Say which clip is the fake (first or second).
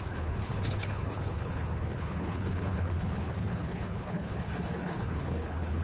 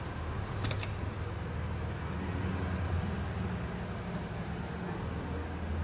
first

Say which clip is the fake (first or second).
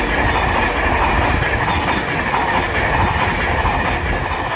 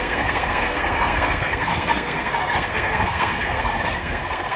second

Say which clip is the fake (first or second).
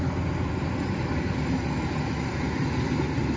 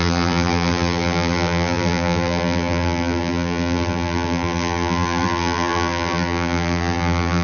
second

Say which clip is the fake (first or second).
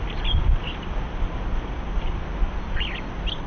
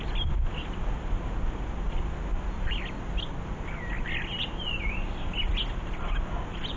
first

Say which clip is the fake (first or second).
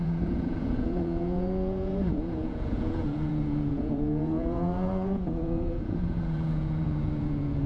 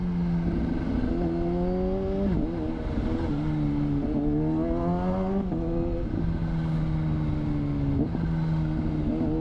first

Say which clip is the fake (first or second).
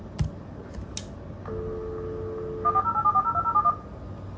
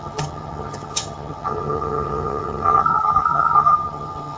second